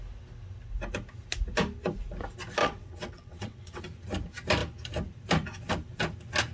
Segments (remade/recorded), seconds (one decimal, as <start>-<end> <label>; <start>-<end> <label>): 0.0-2.6 recorded; 2.6-3.8 remade; 3.8-6.5 recorded